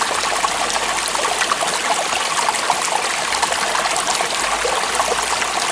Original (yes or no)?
yes